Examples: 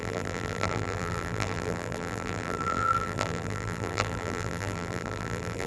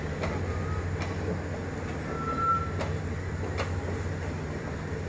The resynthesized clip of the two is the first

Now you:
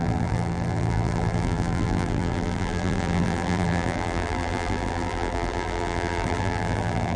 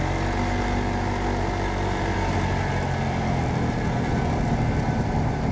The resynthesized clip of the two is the first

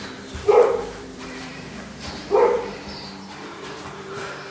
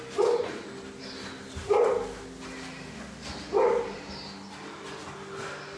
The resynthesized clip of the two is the first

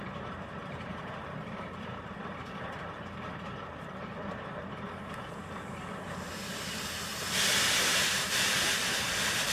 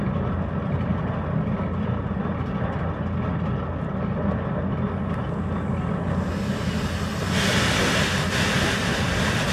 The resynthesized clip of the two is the first